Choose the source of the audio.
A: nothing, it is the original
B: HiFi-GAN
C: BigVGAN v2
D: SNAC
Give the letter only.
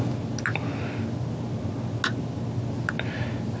A